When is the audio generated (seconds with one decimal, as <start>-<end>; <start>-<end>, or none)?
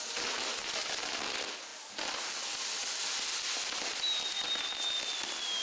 none